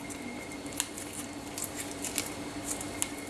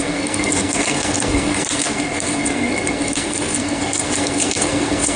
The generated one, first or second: second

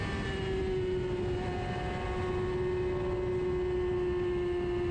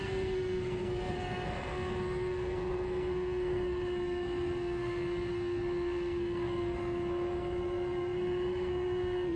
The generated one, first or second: second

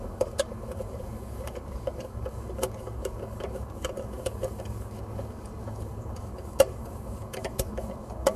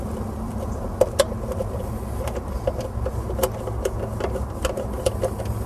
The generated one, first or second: first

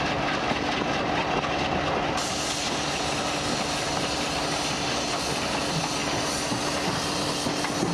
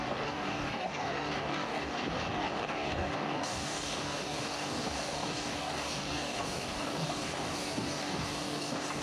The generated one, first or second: second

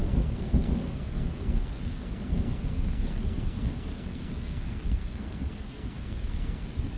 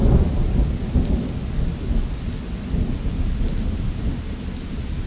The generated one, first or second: first